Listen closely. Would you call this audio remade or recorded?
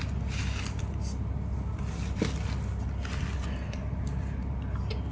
recorded